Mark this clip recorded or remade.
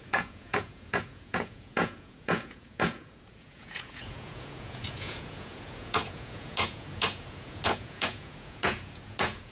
remade